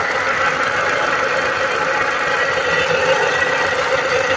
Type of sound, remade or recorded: recorded